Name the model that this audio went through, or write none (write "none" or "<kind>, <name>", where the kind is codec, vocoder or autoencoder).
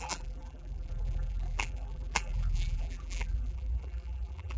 vocoder, BigVGAN v2